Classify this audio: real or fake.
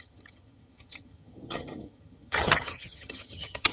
fake